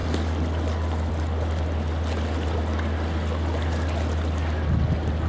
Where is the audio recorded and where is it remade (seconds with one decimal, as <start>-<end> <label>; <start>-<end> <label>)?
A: 0.0-5.3 recorded